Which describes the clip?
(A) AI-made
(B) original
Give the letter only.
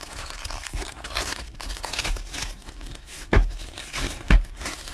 A